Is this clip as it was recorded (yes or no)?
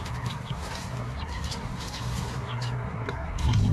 no